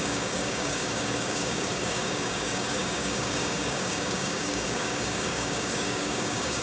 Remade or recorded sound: remade